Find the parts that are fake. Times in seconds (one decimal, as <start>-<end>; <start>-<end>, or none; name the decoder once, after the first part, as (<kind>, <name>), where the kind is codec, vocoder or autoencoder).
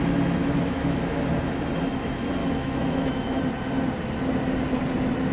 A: 0.4-1.2 (autoencoder, DAC-VAE); 2.4-3.4